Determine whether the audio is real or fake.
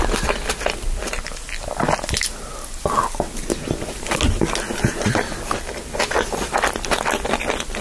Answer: real